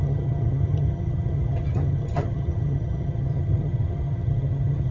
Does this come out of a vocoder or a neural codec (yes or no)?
yes